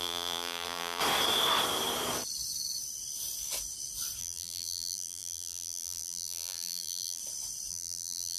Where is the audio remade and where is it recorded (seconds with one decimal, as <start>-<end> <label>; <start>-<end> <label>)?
0.0-1.0 remade; 1.0-4.2 recorded; 4.2-7.2 remade; 7.2-7.7 recorded; 7.7-8.4 remade